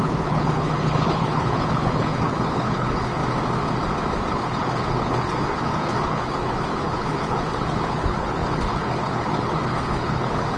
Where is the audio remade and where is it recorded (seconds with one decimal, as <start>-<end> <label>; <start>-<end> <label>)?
0.0-3.2 remade; 3.2-4.3 recorded; 4.3-10.6 remade